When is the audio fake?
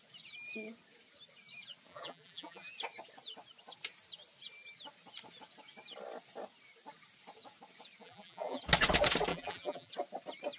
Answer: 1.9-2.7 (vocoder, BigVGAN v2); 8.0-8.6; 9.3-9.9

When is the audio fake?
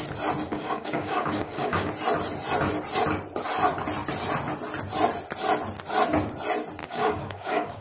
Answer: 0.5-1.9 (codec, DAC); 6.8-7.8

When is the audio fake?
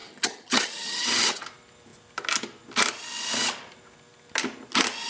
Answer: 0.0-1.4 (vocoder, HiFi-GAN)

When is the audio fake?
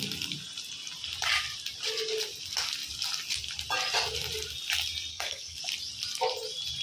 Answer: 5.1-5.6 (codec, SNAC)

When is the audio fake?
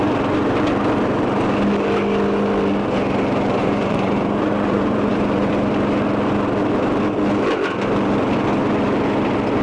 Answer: 3.6-5.5 (vocoder, Vocos)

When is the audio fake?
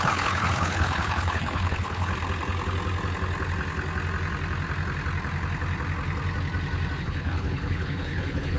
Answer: 0.0-2.1 (codec, HILCodec); 7.0-8.6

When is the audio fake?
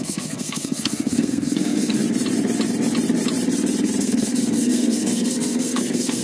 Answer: 0.0-2.0 (codec, SNAC); 4.0-6.2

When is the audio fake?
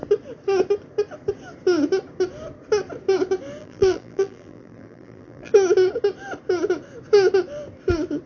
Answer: 3.6-5.5 (vocoder, BigVGAN v2)